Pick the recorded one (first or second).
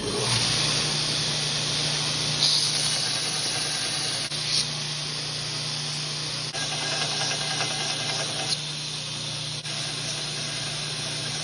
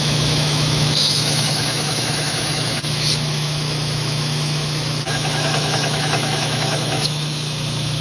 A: first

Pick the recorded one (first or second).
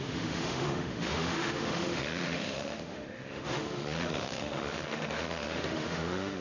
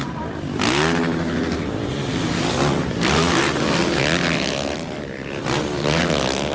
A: second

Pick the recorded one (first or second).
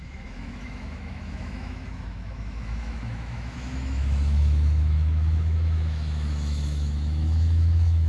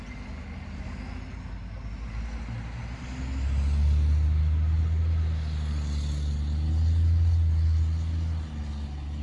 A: second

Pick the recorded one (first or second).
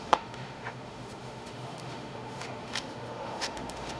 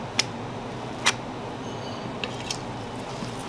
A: second